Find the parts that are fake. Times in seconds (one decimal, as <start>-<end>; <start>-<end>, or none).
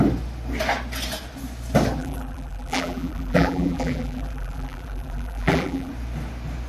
2.0-5.9